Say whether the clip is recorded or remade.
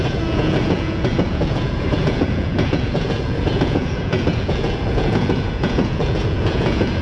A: remade